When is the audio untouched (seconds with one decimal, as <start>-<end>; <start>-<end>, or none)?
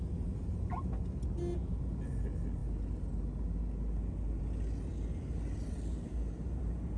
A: 0.0-5.9; 6.6-7.0